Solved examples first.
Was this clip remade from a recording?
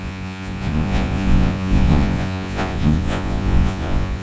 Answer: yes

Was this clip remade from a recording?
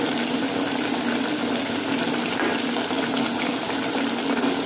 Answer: no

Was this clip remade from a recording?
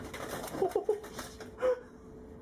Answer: no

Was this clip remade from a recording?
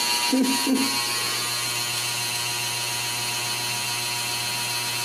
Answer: no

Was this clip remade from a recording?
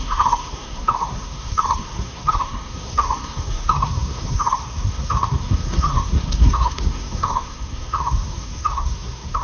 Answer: yes